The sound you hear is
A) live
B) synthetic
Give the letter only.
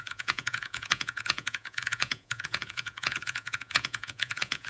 B